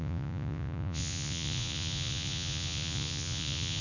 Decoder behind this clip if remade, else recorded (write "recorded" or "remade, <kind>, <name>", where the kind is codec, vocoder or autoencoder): remade, vocoder, Vocos